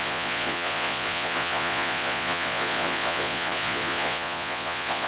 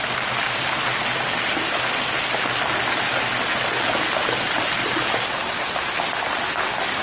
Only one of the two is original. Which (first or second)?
second